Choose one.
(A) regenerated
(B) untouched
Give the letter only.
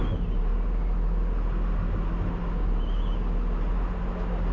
B